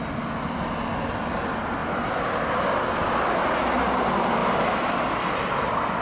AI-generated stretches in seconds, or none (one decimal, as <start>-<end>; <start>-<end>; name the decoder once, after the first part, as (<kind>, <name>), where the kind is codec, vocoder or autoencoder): 1.8-2.5 (vocoder, BigVGAN v2); 4.4-6.0